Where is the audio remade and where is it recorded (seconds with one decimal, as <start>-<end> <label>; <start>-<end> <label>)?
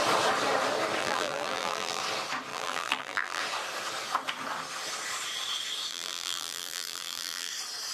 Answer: 0.0-1.0 recorded; 1.0-2.0 remade; 2.0-2.5 recorded; 2.5-3.4 remade; 3.4-5.9 recorded; 5.9-7.5 remade; 7.5-7.9 recorded